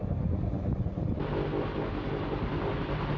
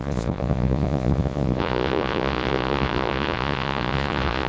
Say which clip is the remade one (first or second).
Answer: second